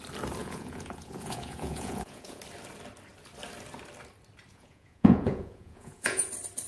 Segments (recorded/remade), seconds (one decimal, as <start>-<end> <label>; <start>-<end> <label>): 0.0-0.4 recorded; 0.4-2.4 remade; 2.4-4.5 recorded; 4.5-6.3 remade; 6.3-6.7 recorded

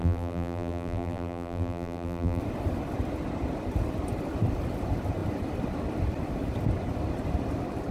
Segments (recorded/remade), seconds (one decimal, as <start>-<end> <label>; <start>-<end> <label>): 0.0-2.4 remade; 2.4-7.9 recorded